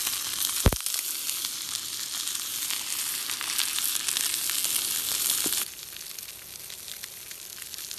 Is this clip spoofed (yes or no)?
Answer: no